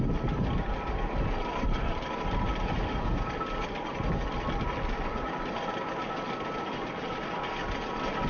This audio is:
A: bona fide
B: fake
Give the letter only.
A